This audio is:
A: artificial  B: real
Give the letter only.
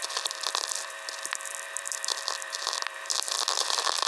A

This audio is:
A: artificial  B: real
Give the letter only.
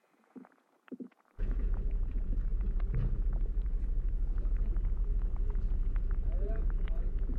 A